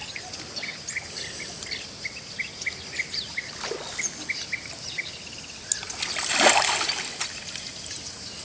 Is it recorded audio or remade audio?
recorded